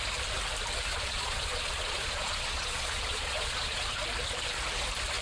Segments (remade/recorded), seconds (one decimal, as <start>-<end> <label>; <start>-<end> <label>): 0.0-0.9 recorded; 0.9-4.0 remade; 4.0-5.2 recorded